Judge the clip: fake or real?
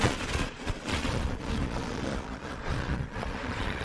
fake